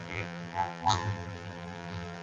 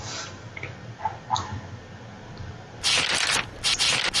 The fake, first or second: first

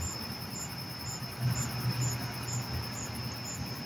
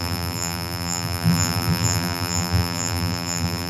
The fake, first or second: second